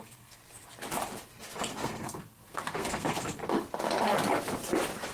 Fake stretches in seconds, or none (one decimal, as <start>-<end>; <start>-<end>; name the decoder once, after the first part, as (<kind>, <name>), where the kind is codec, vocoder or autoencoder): 0.0-0.4 (codec, SNAC); 1.7-3.4